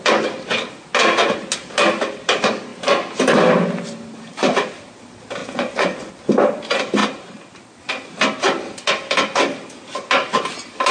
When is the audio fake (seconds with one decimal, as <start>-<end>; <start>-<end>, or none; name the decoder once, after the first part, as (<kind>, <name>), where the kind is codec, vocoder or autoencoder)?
5.4-6.1 (vocoder, Vocos)